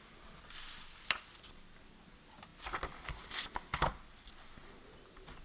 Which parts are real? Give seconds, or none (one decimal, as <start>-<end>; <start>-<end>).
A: 0.0-5.4

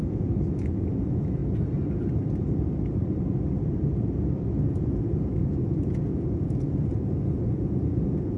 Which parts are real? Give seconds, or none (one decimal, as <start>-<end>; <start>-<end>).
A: 1.4-4.7

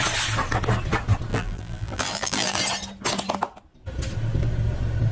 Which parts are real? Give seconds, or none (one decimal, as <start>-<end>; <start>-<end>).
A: 0.0-1.3; 2.6-5.1

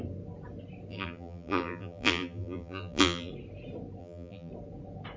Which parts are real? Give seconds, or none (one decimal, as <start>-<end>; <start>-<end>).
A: 0.0-0.9; 3.3-4.0; 4.5-5.2

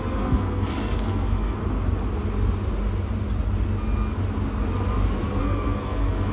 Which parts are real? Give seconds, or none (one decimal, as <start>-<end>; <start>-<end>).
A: 1.6-5.4

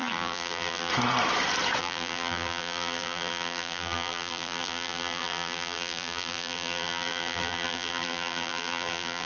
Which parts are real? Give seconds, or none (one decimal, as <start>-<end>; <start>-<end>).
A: 0.9-1.8